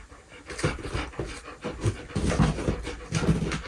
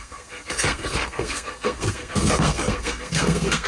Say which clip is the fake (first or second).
second